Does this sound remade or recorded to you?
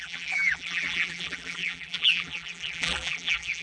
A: remade